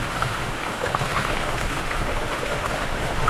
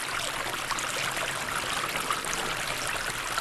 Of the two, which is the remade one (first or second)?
first